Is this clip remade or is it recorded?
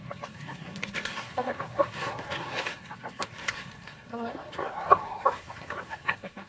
remade